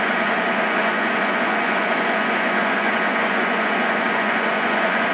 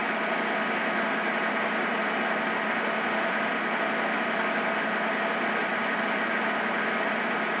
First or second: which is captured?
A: second